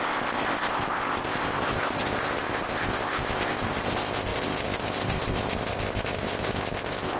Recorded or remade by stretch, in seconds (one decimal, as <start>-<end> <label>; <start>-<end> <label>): 0.0-7.2 remade